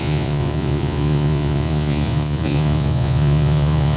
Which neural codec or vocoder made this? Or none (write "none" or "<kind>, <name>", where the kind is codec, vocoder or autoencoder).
vocoder, Vocos